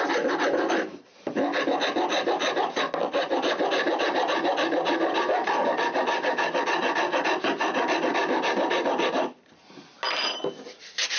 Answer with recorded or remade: recorded